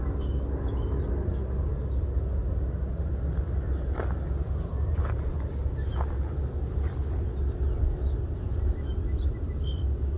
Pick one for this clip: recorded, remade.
recorded